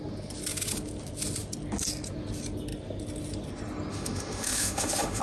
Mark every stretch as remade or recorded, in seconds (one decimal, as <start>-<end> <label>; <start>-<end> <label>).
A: 0.0-3.9 recorded; 3.9-5.2 remade

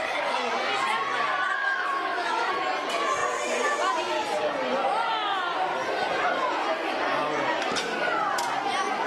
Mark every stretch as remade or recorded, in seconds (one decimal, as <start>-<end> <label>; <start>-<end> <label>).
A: 0.0-1.6 recorded; 1.6-2.5 remade; 2.5-9.1 recorded

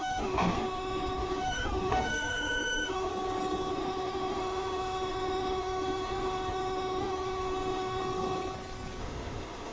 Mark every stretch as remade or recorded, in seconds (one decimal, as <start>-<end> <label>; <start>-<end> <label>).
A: 0.0-3.1 remade; 3.1-3.7 recorded; 3.7-8.0 remade; 8.0-9.0 recorded; 9.0-9.7 remade

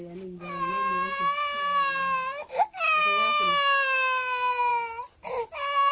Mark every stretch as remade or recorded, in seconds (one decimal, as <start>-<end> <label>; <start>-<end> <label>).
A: 0.0-2.4 recorded; 2.4-3.0 remade; 3.0-5.9 recorded

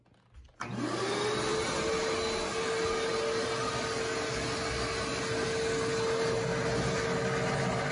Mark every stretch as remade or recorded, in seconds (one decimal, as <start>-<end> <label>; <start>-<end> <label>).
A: 0.0-7.9 recorded

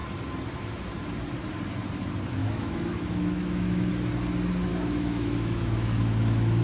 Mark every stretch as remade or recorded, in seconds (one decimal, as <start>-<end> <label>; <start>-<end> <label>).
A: 0.0-2.4 recorded; 2.4-3.9 remade; 3.9-4.7 recorded; 4.7-6.6 remade

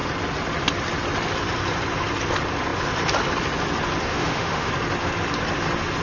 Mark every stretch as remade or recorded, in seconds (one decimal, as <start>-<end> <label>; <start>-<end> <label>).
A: 0.0-4.1 recorded; 4.1-4.7 remade; 4.7-6.0 recorded

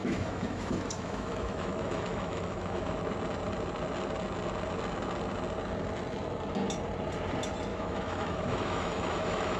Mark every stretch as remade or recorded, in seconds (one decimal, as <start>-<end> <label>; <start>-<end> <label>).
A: 0.0-3.0 remade; 3.0-7.7 recorded; 7.7-9.6 remade